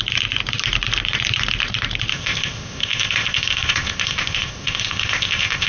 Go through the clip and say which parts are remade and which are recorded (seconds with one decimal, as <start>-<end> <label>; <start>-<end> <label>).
0.0-2.1 recorded; 2.1-5.7 remade